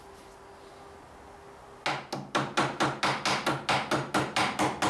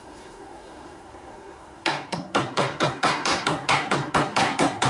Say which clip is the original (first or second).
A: first